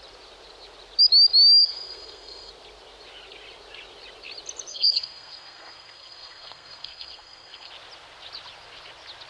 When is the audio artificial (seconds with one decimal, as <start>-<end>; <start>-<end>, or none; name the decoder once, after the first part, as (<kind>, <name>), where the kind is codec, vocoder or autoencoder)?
1.6-2.5 (codec, SNAC); 4.7-7.7